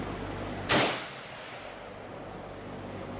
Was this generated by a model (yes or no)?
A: no